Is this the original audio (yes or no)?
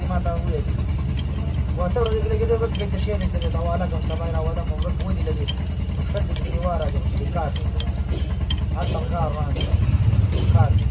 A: yes